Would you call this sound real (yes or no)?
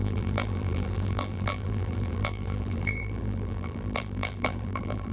no